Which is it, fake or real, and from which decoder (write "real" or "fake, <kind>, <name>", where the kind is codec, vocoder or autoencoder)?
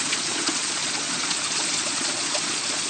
fake, vocoder, Vocos